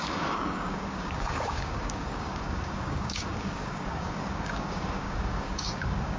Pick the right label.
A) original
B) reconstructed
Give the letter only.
B